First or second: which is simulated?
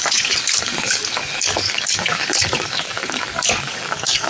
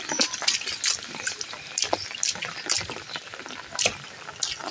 first